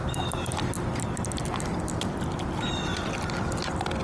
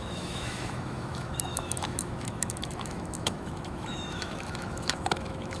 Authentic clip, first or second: first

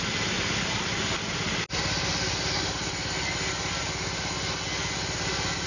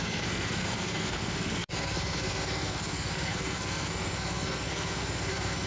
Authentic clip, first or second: first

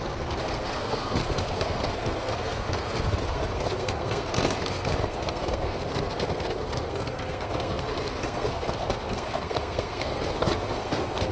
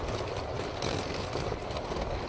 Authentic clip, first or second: second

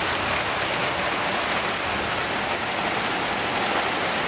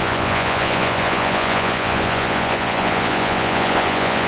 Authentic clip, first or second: first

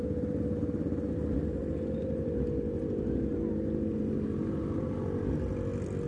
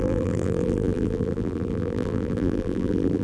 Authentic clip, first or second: first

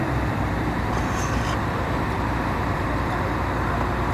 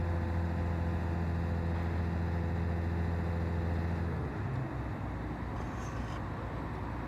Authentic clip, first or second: second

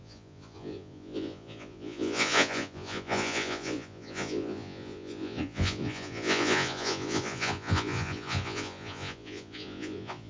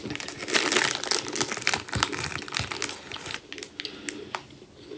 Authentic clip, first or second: second